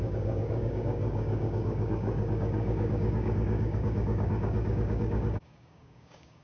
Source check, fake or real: fake